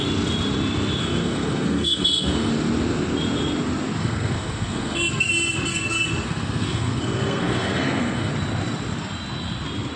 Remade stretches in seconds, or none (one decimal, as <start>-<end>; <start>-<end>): 1.0-2.5; 4.0-5.3; 5.7-8.3